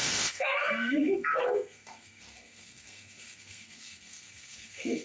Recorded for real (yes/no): no